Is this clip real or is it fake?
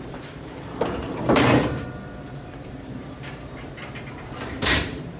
fake